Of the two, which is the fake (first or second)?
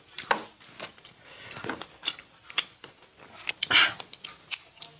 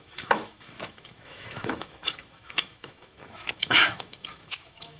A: second